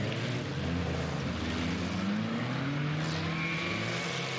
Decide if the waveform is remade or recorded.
recorded